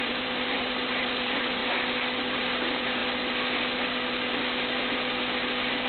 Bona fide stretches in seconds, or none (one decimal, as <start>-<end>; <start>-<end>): 1.6-2.3; 3.0-5.9